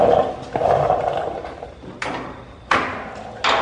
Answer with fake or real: real